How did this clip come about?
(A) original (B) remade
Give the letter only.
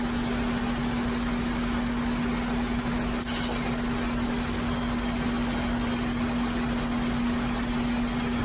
A